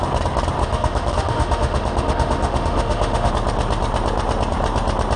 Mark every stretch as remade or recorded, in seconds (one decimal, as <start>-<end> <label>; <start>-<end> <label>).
0.0-0.6 recorded; 0.6-3.3 remade; 3.3-5.2 recorded